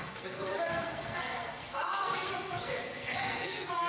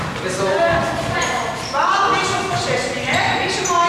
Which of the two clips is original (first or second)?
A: second